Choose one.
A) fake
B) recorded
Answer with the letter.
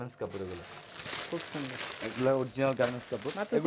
B